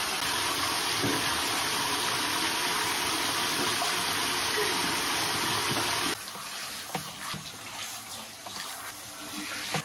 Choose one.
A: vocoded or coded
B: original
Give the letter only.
B